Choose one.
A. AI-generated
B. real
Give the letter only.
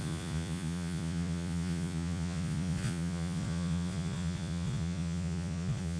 A